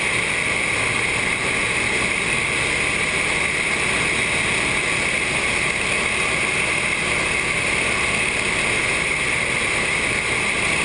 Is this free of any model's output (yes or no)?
yes